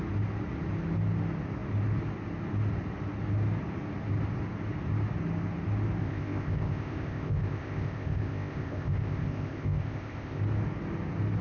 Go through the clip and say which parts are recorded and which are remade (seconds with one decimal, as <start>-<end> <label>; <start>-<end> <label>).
0.0-6.0 recorded; 6.0-10.4 remade; 10.4-11.4 recorded